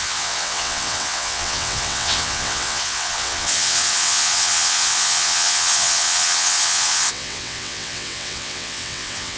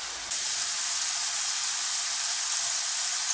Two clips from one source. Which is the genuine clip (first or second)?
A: second